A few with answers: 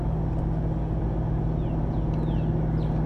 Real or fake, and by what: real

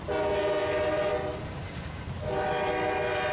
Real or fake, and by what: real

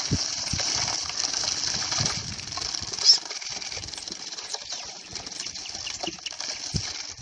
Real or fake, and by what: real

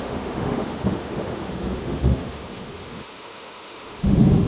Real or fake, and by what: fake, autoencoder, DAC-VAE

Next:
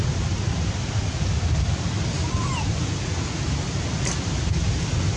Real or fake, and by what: fake, vocoder, BigVGAN v2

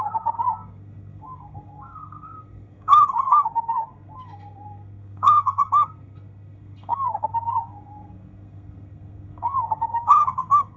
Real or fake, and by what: fake, codec, SNAC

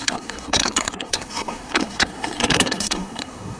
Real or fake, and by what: fake, codec, SNAC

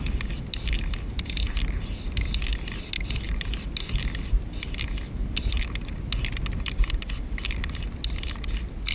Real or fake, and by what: real